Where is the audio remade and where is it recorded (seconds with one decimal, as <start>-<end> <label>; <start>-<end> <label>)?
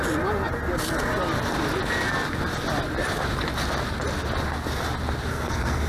0.0-5.3 recorded; 5.3-5.9 remade